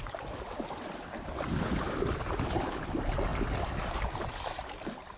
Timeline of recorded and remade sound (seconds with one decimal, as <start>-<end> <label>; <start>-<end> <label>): 0.0-5.2 recorded

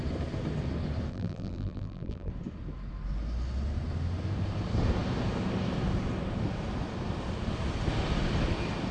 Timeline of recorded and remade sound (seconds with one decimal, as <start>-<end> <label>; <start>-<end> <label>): 0.0-1.1 recorded; 1.1-2.3 remade; 2.3-8.9 recorded

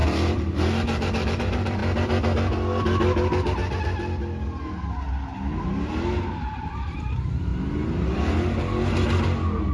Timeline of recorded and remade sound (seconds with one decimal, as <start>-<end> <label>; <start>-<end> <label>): 0.0-1.8 remade; 1.8-6.4 recorded; 6.4-7.5 remade; 7.5-9.7 recorded

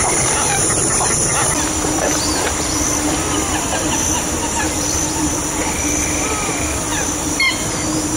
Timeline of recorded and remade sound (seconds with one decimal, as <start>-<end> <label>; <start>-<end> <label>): 0.0-6.9 remade; 6.9-8.2 recorded

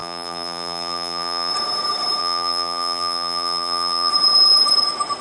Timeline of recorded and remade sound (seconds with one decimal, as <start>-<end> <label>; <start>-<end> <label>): 0.0-1.5 remade; 1.5-2.2 recorded; 2.2-4.1 remade; 4.1-5.2 recorded

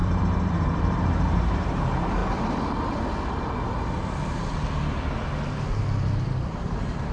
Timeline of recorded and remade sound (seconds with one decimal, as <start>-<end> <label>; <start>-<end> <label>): 0.0-2.2 remade; 2.2-6.5 recorded; 6.5-7.1 remade